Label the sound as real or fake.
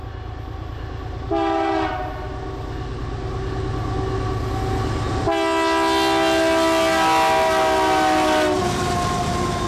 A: real